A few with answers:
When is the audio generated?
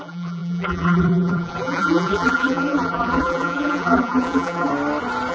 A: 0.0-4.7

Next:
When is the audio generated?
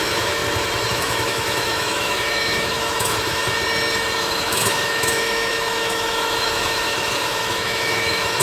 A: 0.0-0.4; 0.9-3.4; 4.2-8.4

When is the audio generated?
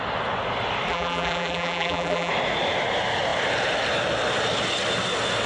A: 0.9-2.3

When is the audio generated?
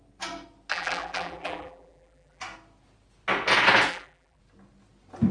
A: 0.7-2.4; 3.9-4.4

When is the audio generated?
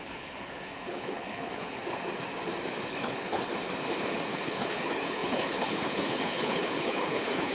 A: 0.0-1.8; 2.9-3.5; 4.3-7.5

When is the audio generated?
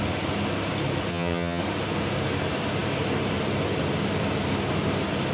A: 1.1-1.6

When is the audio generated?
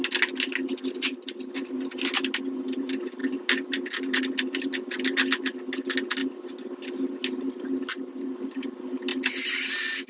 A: none